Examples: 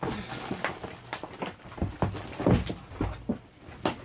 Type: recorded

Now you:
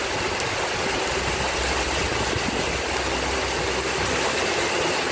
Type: recorded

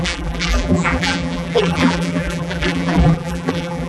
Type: remade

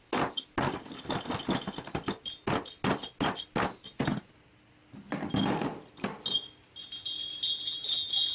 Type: recorded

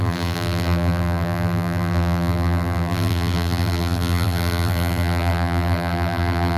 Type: remade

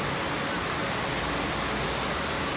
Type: recorded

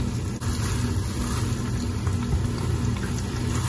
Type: recorded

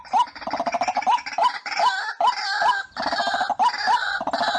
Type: recorded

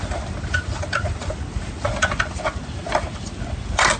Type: recorded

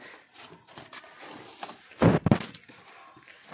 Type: recorded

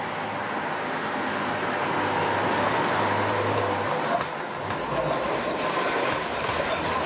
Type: recorded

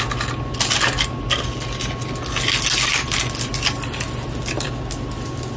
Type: recorded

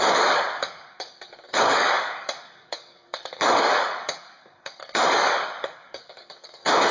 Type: remade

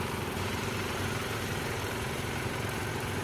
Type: remade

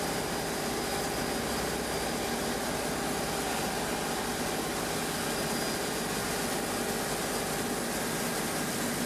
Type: recorded